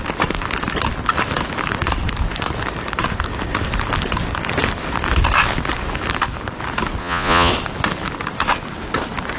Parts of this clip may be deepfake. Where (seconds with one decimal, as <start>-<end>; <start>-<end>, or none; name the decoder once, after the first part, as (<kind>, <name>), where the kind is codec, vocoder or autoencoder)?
7.0-7.5 (vocoder, Vocos)